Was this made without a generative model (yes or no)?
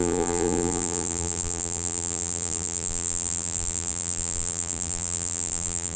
no